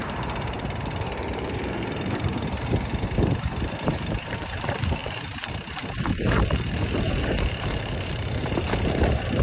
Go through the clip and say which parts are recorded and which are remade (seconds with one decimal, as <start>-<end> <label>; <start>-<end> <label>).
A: 0.0-9.4 remade